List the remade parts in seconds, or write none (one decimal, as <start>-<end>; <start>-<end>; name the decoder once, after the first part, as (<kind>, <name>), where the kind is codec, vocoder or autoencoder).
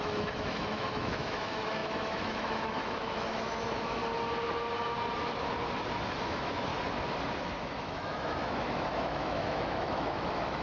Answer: 0.0-4.0 (autoencoder, DAC-VAE); 6.2-6.7; 7.4-10.6